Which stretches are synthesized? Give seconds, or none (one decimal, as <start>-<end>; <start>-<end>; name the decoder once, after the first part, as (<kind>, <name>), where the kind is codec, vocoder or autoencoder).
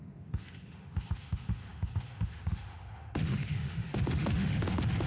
0.0-5.1 (autoencoder, DAC-VAE)